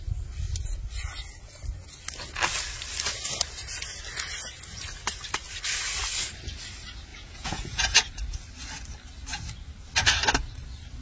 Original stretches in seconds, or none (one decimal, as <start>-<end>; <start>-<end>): 0.0-7.1; 8.1-11.0